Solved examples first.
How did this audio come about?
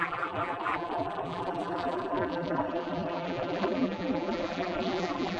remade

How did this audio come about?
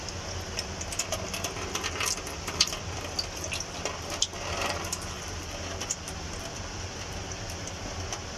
remade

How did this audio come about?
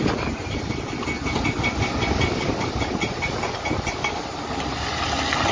recorded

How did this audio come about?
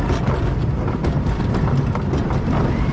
recorded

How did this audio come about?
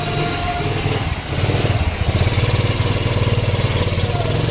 recorded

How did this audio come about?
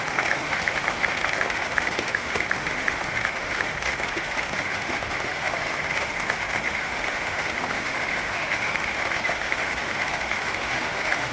remade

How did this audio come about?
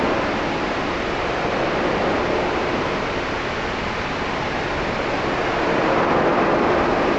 recorded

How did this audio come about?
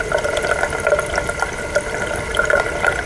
recorded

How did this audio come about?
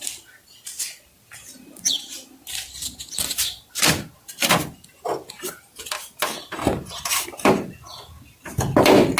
recorded